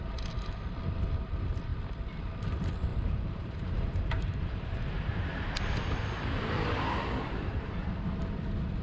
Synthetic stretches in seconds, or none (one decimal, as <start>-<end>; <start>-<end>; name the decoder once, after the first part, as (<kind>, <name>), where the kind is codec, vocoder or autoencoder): 2.9-7.9 (vocoder, BigVGAN v2)